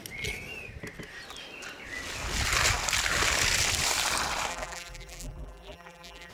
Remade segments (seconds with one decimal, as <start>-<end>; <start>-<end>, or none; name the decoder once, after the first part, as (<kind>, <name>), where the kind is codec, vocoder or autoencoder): 4.5-6.3 (vocoder, BigVGAN v2)